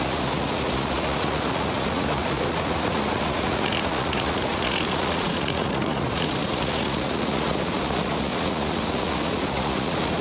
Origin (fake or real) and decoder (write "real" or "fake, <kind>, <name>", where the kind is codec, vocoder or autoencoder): fake, vocoder, Vocos